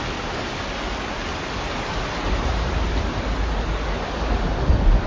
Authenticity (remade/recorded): recorded